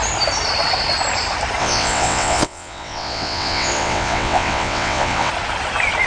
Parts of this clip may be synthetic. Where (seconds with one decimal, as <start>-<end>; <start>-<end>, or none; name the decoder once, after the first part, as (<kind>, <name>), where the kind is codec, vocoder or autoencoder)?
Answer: 1.6-5.3 (vocoder, WaveNeXt)